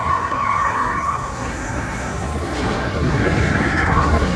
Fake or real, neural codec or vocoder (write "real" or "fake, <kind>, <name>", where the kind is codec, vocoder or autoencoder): fake, codec, SNAC